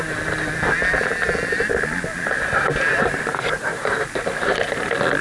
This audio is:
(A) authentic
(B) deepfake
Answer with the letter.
A